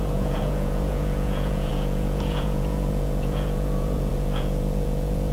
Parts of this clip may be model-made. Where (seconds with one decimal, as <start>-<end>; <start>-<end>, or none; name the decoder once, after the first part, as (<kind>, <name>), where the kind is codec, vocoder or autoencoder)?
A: 0.0-5.3 (vocoder, Vocos)